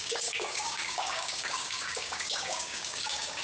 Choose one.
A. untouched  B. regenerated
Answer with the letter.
B